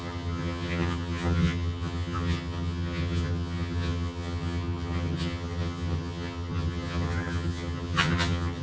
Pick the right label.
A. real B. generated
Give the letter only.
B